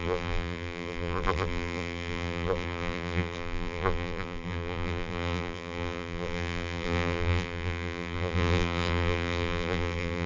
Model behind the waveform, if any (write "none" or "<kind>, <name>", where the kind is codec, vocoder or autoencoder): vocoder, BigVGAN v2